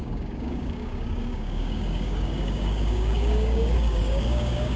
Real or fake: fake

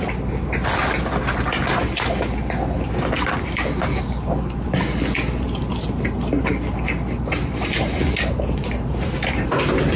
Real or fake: real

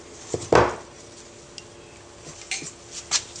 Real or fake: real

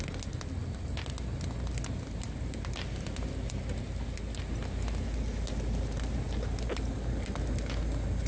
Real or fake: real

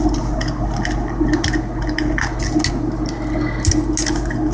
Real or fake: real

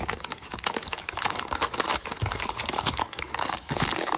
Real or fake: fake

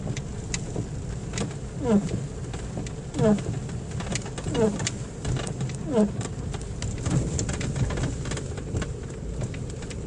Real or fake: real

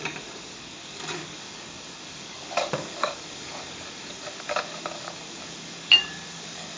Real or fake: fake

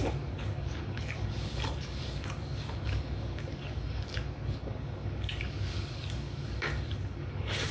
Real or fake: fake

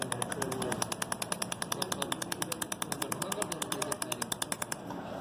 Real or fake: real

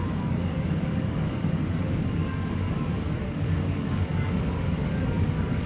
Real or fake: fake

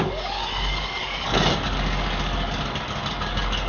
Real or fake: fake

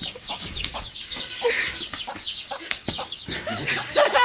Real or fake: fake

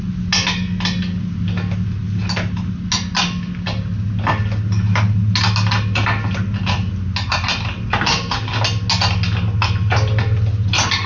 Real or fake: real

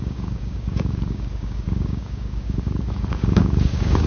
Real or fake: fake